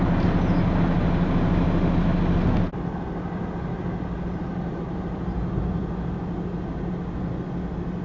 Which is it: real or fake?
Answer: real